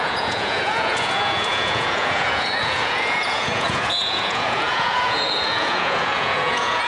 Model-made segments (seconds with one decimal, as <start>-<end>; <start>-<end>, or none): 0.0-6.9